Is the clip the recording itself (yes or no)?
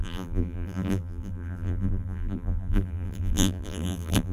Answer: no